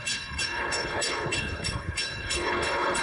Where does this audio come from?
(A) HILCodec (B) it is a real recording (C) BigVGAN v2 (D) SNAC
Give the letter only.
A